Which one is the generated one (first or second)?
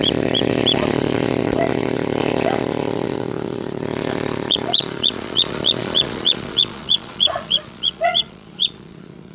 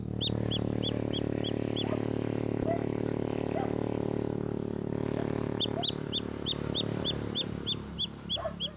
first